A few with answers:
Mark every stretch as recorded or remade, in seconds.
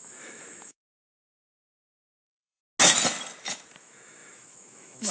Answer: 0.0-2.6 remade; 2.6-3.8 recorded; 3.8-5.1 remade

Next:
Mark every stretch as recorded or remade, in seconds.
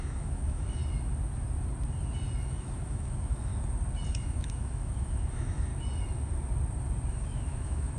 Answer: 0.0-0.8 remade; 0.8-2.4 recorded; 2.4-3.5 remade; 3.5-4.1 recorded; 4.1-5.7 remade; 5.7-7.1 recorded; 7.1-8.0 remade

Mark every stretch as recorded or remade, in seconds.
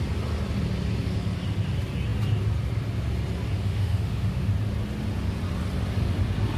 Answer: 0.0-3.6 recorded; 3.6-4.5 remade; 4.5-6.6 recorded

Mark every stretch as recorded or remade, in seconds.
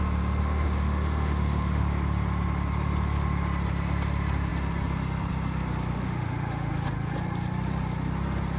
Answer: 0.0-0.4 recorded; 0.4-1.8 remade; 1.8-5.9 recorded; 5.9-6.7 remade; 6.7-8.6 recorded